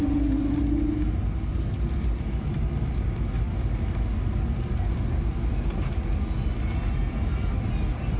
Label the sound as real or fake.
real